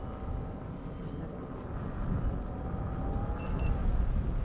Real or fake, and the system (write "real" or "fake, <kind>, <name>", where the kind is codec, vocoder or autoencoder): real